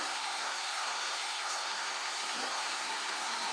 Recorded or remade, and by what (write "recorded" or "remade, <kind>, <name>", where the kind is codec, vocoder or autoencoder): remade, codec, SNAC